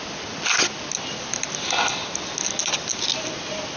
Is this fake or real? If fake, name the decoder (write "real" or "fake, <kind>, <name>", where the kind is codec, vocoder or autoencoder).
real